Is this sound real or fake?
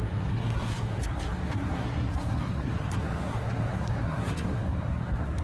fake